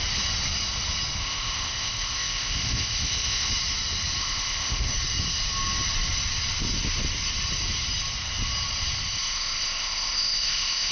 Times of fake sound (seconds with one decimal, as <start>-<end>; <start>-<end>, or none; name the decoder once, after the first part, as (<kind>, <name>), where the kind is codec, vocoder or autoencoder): 1.2-3.5 (codec, ZipCodec); 4.2-4.9; 9.1-10.9